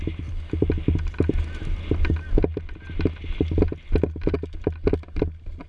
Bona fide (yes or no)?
yes